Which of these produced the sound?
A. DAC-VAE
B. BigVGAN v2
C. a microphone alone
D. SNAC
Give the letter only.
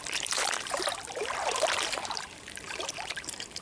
B